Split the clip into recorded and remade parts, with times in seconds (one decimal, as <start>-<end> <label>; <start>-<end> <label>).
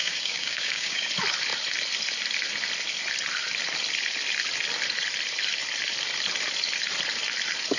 0.0-1.1 remade; 1.1-7.8 recorded